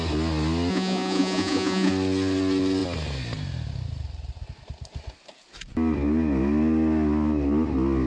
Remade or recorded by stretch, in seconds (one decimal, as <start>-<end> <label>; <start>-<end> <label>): 0.0-0.7 recorded; 0.7-1.9 remade; 1.9-8.1 recorded

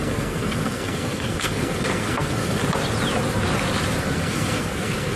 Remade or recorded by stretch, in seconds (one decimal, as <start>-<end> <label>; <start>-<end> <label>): 0.0-2.6 remade; 2.6-4.0 recorded; 4.0-5.2 remade

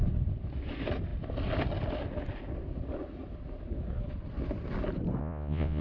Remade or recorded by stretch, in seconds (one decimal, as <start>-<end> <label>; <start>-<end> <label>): 0.0-5.2 recorded; 5.2-5.8 remade

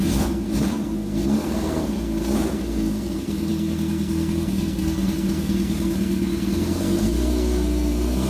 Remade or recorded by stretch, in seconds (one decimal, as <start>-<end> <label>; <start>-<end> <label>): 0.0-8.3 remade

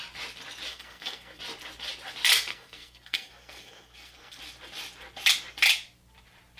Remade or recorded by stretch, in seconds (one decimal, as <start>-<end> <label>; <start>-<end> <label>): 0.0-0.7 recorded; 0.7-1.4 remade; 1.4-2.5 recorded; 2.5-4.4 remade; 4.4-6.6 recorded